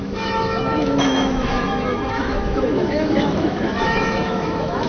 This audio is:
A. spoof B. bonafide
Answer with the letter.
A